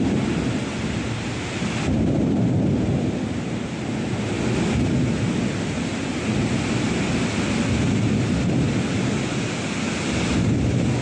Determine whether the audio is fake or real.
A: real